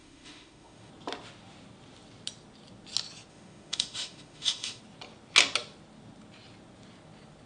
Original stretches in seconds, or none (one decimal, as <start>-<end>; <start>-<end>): 0.9-3.3; 4.8-7.5